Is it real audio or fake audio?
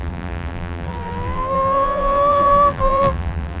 fake